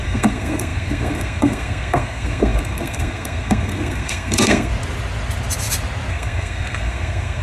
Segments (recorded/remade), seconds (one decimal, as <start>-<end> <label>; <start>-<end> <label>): 0.0-4.7 remade; 4.7-6.1 recorded; 6.1-7.4 remade